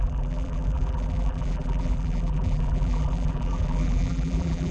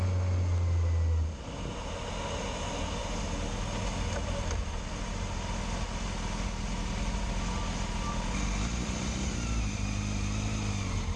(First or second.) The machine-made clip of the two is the first